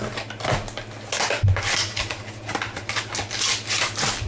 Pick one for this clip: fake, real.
real